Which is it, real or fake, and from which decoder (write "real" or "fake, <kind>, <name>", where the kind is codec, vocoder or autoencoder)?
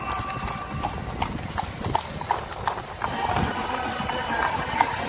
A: real